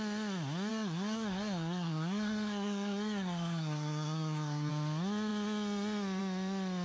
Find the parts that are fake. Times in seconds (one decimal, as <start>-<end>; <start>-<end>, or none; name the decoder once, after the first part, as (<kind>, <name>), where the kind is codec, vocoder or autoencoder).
0.7-4.7 (codec, SNAC)